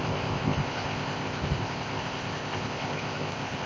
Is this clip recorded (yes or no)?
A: no